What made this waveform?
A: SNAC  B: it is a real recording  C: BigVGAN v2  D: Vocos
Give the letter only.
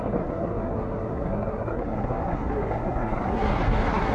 A